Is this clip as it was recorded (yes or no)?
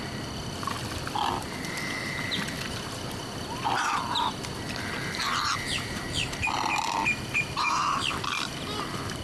yes